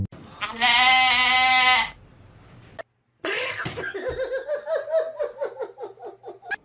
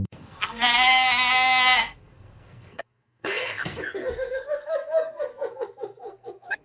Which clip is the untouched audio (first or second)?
first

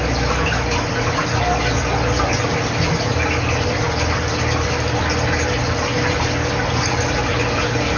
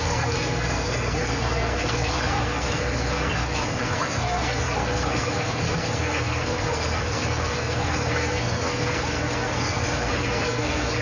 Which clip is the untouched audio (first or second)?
first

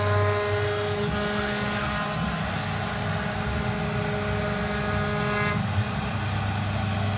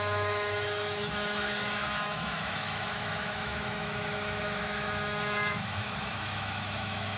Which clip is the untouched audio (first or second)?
first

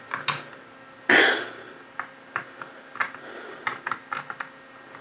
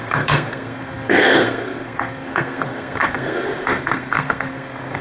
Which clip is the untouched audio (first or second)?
first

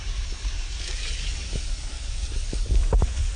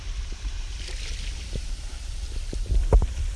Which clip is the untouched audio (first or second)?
second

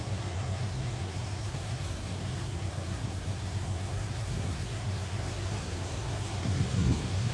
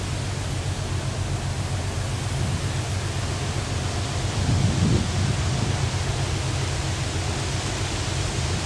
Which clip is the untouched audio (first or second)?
second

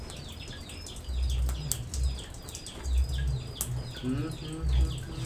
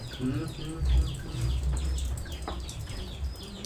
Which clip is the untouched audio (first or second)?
first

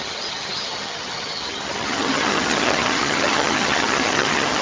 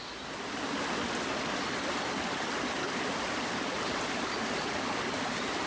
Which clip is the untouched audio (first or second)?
second